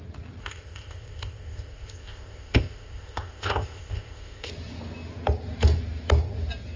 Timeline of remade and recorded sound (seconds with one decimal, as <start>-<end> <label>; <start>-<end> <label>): 0.0-0.4 recorded; 0.4-4.5 remade; 4.5-6.8 recorded